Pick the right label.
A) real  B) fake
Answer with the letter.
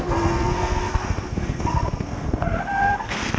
B